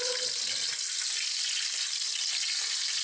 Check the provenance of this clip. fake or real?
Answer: real